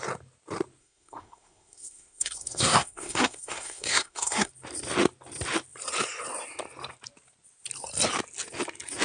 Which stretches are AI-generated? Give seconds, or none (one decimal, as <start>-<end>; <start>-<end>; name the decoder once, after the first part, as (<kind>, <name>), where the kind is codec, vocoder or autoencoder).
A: 0.8-4.5 (codec, SNAC)